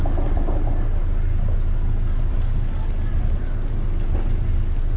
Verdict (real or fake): real